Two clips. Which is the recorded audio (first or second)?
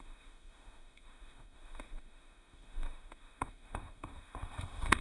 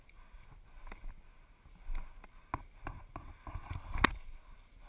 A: second